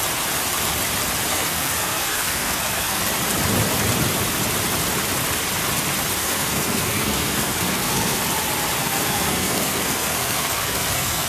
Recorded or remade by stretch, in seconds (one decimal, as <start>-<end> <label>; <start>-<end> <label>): 0.0-1.3 recorded; 1.3-3.0 remade; 3.0-6.2 recorded; 6.2-8.2 remade; 8.2-8.8 recorded; 8.8-11.3 remade